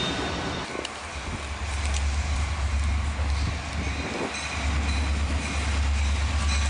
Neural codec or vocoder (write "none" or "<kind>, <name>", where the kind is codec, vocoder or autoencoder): none